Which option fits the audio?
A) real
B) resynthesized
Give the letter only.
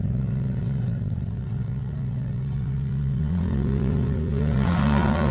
B